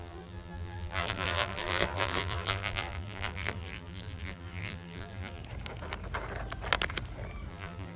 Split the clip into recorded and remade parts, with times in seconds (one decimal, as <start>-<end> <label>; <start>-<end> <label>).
0.0-5.4 remade; 5.4-7.5 recorded; 7.5-8.0 remade